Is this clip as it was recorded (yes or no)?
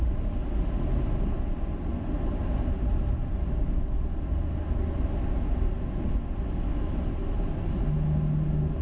yes